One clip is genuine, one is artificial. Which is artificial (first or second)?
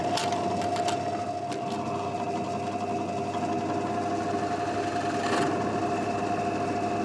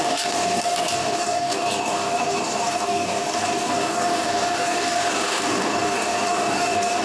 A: second